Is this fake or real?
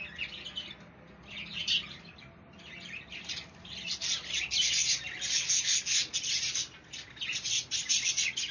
real